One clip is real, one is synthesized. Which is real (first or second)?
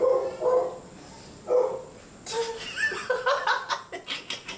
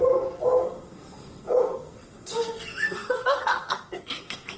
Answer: first